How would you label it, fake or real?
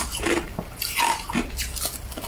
real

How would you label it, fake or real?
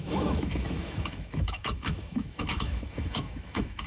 fake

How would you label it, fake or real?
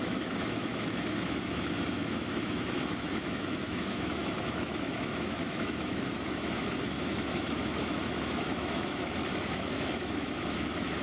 fake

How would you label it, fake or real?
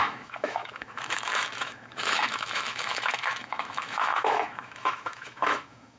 fake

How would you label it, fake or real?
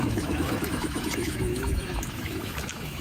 fake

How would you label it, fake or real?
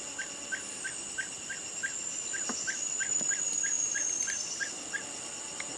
real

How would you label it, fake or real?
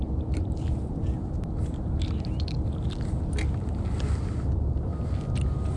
real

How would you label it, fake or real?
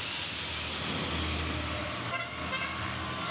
real